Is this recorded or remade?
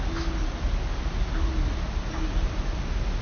recorded